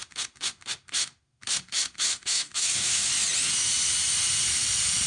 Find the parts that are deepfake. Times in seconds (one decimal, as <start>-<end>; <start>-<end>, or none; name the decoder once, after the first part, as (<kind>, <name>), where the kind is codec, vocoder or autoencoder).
0.0-3.1 (autoencoder, DAC-VAE)